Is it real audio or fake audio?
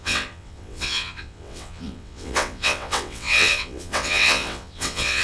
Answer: fake